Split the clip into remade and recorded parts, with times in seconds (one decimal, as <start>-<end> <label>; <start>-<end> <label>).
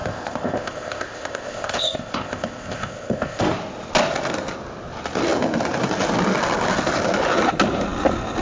0.0-3.5 remade; 3.5-8.4 recorded